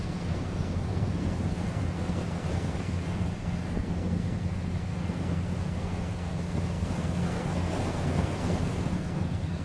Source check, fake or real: fake